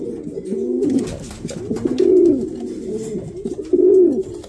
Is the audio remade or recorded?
recorded